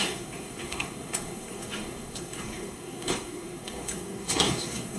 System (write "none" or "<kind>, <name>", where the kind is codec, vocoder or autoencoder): codec, SNAC